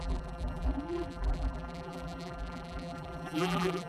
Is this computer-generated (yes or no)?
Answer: yes